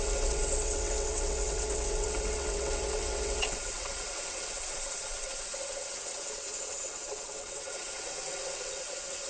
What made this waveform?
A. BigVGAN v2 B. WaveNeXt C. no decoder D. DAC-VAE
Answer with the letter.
B